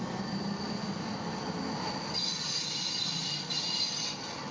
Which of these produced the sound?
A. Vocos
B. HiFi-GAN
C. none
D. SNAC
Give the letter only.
C